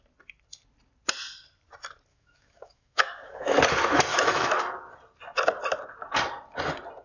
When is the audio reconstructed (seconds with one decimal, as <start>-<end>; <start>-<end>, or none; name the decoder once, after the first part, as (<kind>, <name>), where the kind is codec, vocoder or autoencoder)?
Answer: 2.1-3.6 (autoencoder, DAC-VAE); 4.1-4.6